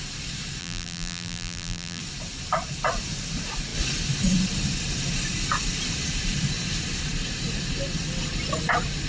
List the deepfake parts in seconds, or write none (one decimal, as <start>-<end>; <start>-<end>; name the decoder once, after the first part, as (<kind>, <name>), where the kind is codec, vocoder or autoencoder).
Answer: 0.6-2.0 (vocoder, BigVGAN v2)